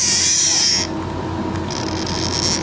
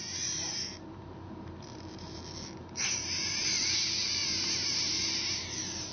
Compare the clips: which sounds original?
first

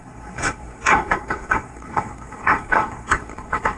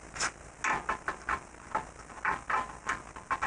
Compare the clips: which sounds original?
second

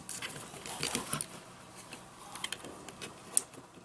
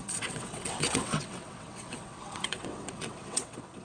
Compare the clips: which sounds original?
first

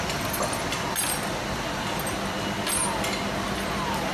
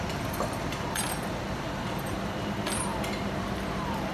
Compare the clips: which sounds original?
first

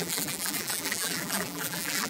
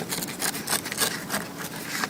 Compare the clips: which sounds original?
second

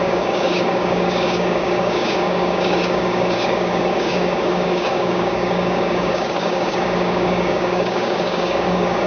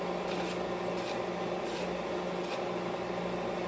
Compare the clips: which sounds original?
second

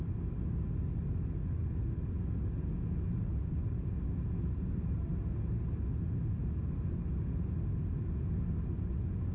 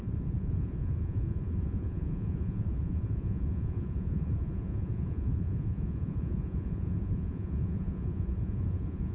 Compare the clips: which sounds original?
first